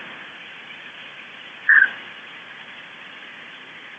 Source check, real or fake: fake